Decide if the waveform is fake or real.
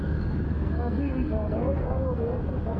fake